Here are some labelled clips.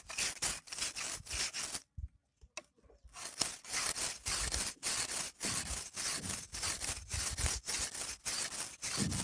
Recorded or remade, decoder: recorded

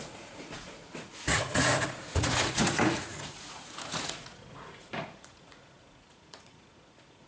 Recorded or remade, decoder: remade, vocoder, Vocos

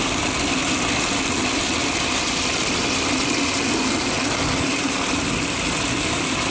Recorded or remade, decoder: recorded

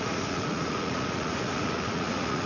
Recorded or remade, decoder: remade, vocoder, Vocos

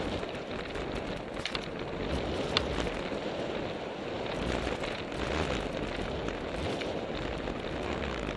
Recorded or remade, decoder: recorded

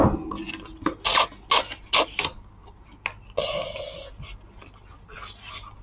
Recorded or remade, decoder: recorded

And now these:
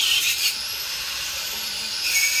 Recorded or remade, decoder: remade, vocoder, BigVGAN v2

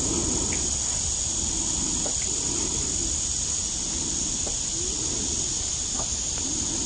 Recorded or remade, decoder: recorded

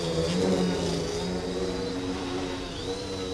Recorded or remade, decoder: recorded